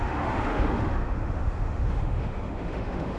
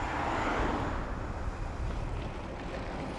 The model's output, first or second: first